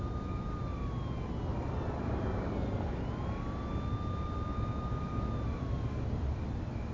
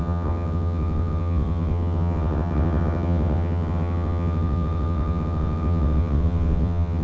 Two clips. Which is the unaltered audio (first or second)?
first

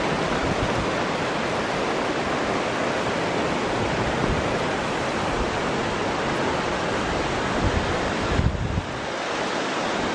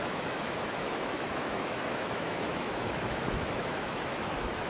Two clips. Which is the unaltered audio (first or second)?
first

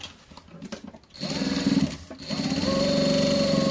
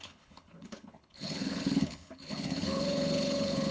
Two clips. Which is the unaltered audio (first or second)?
first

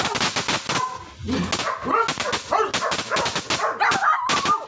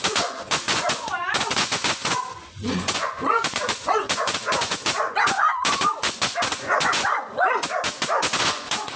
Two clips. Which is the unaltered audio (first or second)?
first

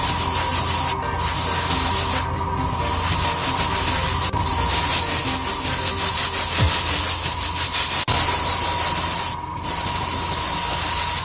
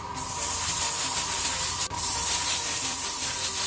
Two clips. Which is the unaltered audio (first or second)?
first